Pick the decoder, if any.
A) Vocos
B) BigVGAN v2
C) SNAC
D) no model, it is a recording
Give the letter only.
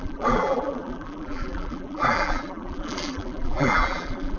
B